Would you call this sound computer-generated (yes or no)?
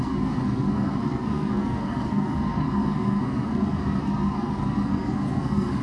yes